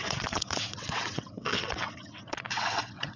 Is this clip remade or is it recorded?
remade